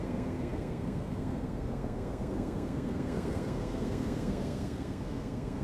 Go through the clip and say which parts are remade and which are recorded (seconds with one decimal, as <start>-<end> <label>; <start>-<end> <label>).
0.0-5.6 remade